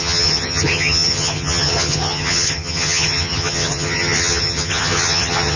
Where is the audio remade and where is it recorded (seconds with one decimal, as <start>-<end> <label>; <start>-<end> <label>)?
0.0-5.6 remade